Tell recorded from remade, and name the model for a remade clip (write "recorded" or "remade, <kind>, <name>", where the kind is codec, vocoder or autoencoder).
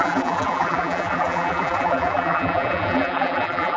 remade, vocoder, BigVGAN v2